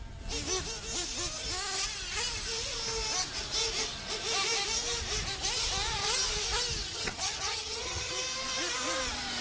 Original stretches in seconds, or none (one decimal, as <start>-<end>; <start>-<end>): 0.0-6.9; 8.1-9.4